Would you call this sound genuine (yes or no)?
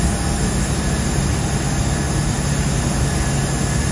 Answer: yes